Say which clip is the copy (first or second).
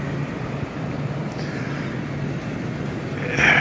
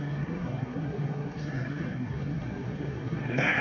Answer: second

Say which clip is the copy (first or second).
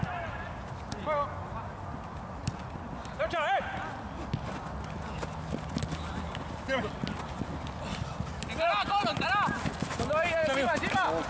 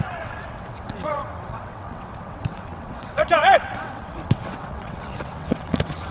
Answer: second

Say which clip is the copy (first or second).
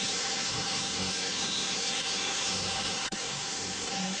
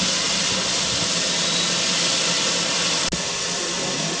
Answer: first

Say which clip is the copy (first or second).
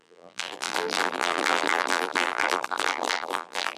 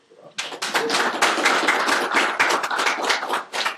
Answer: first